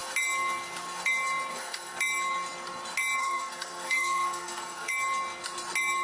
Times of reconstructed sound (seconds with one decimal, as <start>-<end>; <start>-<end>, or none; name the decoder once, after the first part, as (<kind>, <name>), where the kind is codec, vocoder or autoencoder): 1.5-2.0 (codec, SNAC); 3.2-4.9